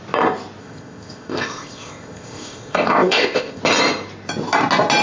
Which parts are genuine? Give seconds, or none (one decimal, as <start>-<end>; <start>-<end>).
0.0-0.6; 3.6-5.0